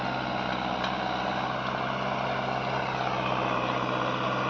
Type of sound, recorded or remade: recorded